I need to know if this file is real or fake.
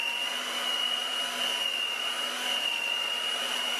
fake